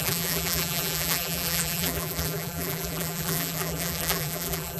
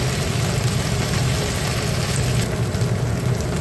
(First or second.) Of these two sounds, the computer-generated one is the first